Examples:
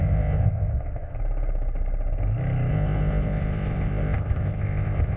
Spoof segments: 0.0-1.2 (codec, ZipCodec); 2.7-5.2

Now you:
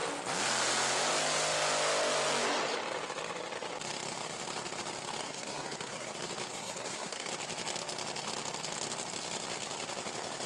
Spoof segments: 5.2-6.1 (codec, SNAC); 6.5-7.3

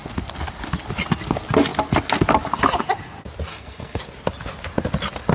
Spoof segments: 3.5-4.0 (codec, SNAC)

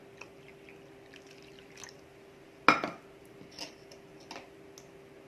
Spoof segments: 3.2-4.1 (vocoder, BigVGAN v2)

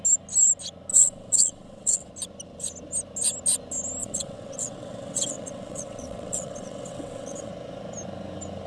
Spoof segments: 0.9-2.1 (vocoder, WaveNeXt); 4.0-7.5

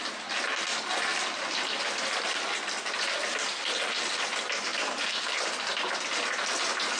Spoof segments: 4.7-5.3 (vocoder, BigVGAN v2)

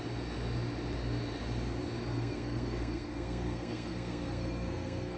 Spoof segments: 2.1-5.2 (codec, SNAC)